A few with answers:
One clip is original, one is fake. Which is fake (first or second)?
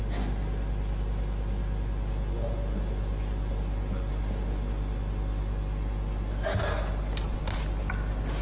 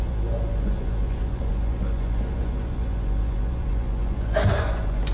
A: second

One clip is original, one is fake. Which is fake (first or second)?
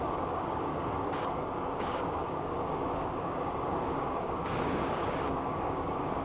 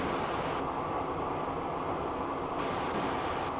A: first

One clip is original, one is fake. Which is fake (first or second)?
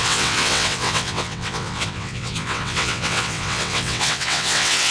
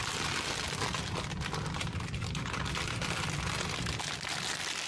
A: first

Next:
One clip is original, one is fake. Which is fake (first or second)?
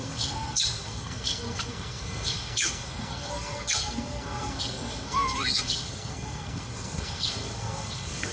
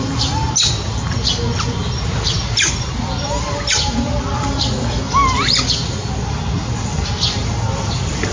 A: first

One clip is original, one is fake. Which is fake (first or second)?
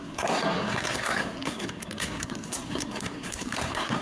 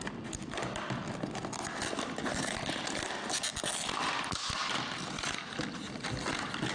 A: first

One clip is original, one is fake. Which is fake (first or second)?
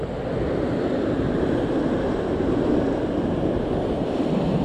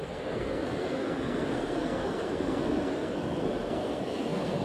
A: second